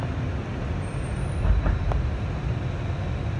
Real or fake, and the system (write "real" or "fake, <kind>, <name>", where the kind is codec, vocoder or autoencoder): real